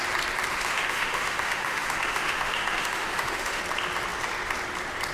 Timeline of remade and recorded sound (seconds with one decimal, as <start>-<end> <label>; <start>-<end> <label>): 0.0-0.5 recorded; 0.5-3.6 remade; 3.6-5.1 recorded